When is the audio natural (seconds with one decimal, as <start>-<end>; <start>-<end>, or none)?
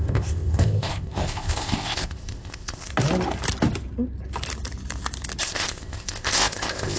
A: 2.9-5.4